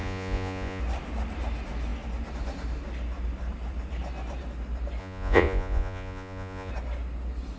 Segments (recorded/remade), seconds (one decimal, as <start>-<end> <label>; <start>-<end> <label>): 0.0-0.8 remade; 0.8-5.0 recorded; 5.0-6.7 remade; 6.7-7.6 recorded